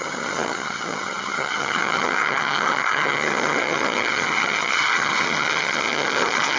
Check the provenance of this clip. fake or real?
fake